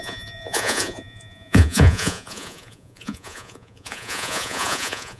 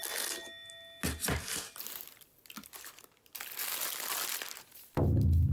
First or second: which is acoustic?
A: second